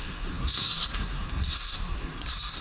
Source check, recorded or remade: remade